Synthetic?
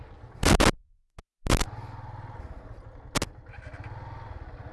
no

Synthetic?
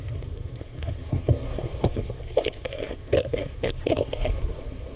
yes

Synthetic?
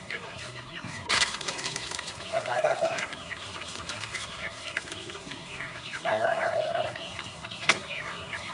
yes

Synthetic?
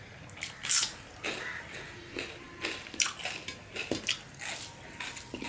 no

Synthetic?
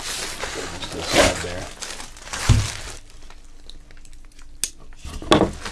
no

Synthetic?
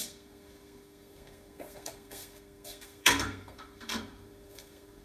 yes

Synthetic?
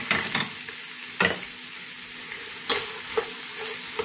no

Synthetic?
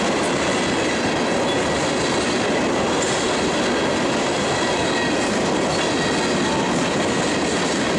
no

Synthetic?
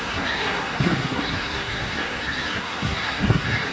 yes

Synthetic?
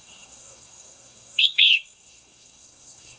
yes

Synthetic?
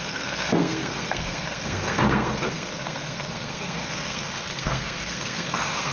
yes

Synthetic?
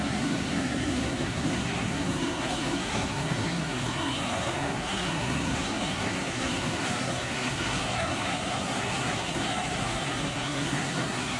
yes